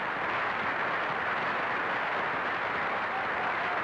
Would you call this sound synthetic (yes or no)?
no